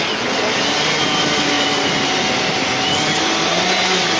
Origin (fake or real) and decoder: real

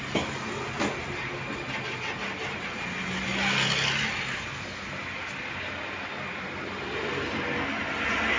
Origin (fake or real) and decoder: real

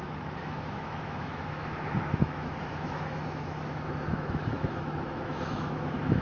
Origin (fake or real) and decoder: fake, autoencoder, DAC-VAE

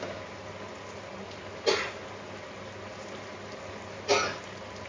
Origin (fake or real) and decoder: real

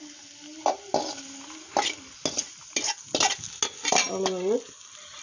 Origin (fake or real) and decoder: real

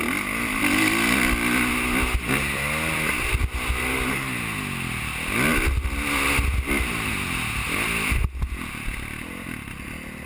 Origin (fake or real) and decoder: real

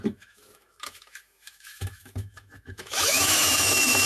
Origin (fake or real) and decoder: fake, autoencoder, DAC-VAE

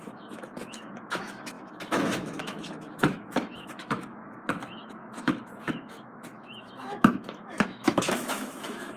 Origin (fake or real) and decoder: fake, autoencoder, DAC-VAE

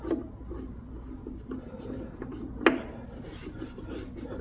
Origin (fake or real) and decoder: real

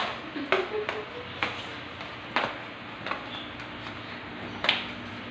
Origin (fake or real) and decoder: real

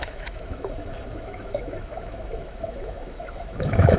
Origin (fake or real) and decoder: fake, autoencoder, DAC-VAE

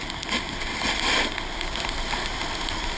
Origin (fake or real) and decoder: real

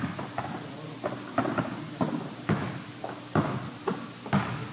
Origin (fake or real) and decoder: real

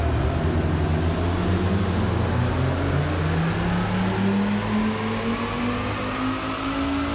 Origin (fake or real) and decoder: real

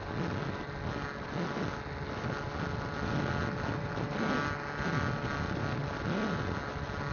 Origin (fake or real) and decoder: real